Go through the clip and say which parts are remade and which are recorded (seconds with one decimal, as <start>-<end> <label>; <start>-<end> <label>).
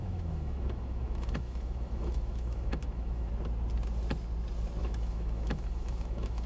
0.0-3.3 remade; 3.3-4.8 recorded; 4.8-6.5 remade